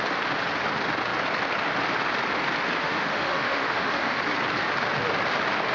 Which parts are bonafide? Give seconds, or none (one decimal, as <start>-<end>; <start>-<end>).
0.0-2.8; 4.2-5.7